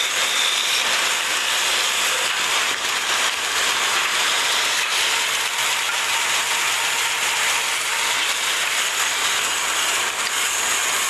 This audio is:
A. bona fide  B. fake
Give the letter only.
A